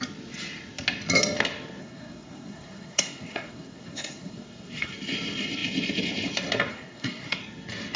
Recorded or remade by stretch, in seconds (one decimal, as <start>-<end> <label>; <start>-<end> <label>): 0.0-1.8 recorded; 1.8-4.9 remade; 4.9-6.7 recorded; 6.7-7.4 remade; 7.4-8.0 recorded